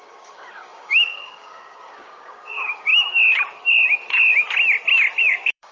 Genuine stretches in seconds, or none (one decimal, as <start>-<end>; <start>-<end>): 2.9-5.2